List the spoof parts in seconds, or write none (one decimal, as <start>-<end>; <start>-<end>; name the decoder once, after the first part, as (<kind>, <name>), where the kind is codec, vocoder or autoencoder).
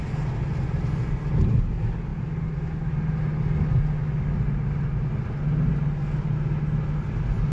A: none